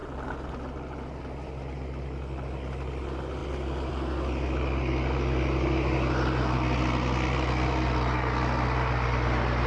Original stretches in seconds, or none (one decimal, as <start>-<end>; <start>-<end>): 0.0-9.7